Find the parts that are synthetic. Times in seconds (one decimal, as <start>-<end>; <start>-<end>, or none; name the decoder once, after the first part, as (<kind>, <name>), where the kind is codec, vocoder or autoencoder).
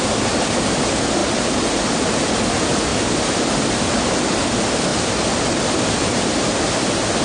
1.2-2.0 (vocoder, BigVGAN v2)